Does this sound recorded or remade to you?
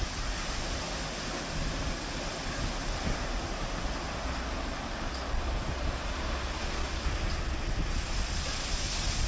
recorded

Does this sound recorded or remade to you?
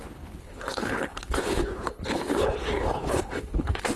remade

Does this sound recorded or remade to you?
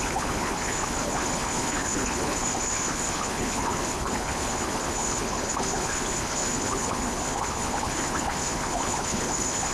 remade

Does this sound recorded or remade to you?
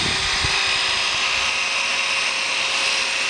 recorded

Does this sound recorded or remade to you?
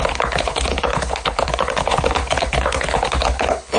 remade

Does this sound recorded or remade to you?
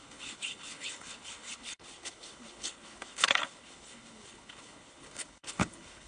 remade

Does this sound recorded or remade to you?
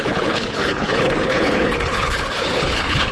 remade